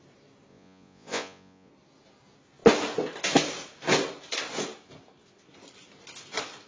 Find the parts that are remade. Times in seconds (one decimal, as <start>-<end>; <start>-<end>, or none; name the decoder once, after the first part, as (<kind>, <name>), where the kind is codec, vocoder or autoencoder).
0.5-1.7 (vocoder, Vocos)